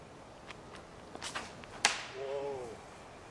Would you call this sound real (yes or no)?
yes